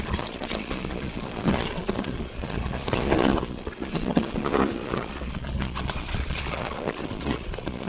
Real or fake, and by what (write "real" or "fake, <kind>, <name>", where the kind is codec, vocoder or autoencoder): fake, vocoder, Vocos